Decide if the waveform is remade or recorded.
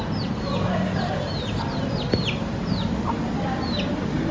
recorded